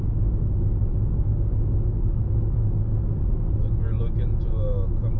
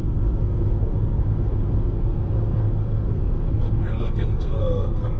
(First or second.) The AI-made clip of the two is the second